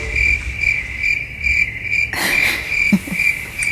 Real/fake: real